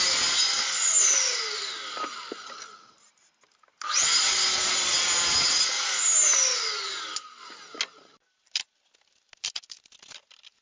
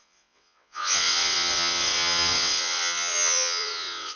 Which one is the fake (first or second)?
second